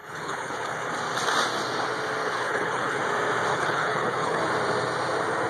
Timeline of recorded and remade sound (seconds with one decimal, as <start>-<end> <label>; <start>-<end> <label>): 0.0-0.9 remade; 0.9-2.2 recorded; 2.2-3.0 remade; 3.0-3.5 recorded; 3.5-4.4 remade; 4.4-5.5 recorded